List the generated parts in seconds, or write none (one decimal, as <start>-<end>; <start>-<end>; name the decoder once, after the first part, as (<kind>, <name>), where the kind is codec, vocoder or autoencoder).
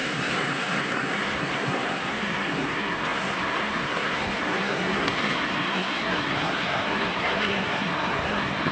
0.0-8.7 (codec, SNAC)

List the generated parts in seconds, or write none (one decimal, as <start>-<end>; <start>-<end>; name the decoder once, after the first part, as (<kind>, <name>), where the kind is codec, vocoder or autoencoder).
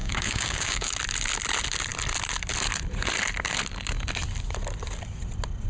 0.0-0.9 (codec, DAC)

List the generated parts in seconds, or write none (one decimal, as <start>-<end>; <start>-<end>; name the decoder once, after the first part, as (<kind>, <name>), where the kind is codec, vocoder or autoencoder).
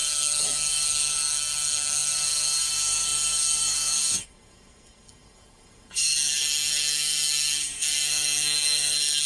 0.0-9.3 (codec, SNAC)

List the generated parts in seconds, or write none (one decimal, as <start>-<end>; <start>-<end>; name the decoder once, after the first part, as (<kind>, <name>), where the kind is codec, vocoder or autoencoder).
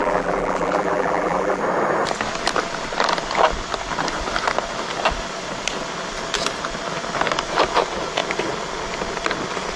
0.0-1.6 (vocoder, BigVGAN v2)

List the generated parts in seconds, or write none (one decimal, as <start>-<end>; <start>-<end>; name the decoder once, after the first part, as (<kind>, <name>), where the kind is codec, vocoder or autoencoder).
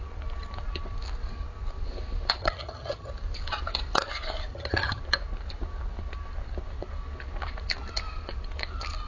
2.4-3.1 (vocoder, HiFi-GAN); 4.5-5.0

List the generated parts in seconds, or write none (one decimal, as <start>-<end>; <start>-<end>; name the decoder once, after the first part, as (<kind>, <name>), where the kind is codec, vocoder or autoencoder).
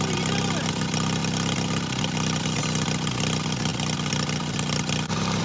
none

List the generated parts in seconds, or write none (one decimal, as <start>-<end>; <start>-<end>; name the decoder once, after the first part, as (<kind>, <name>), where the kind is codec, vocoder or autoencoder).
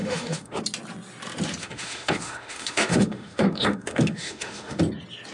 0.0-0.6 (autoencoder, DAC-VAE); 1.6-4.8